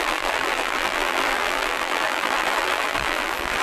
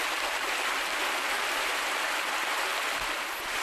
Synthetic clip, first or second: first